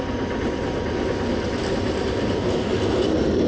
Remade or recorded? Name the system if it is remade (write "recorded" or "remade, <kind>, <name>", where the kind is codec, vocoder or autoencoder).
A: recorded